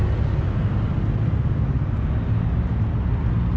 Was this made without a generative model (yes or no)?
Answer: yes